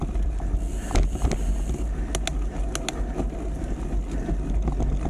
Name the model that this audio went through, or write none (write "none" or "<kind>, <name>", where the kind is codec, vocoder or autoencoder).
none